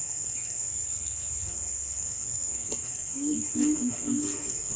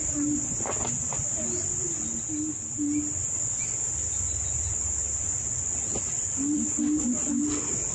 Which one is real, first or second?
second